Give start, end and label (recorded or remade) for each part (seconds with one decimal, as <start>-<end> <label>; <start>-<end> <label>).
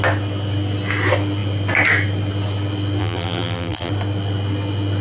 0.0-3.0 recorded; 3.0-3.9 remade; 3.9-5.0 recorded